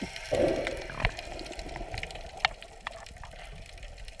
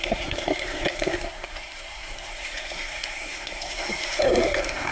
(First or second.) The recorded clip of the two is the first